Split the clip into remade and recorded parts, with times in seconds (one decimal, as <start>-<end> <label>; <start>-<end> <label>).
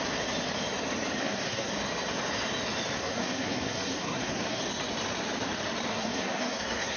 0.0-1.2 recorded; 1.2-1.7 remade; 1.7-3.0 recorded; 3.0-4.6 remade; 4.6-5.9 recorded; 5.9-7.0 remade